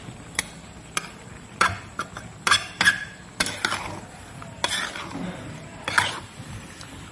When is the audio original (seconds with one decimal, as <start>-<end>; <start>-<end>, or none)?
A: 0.0-7.1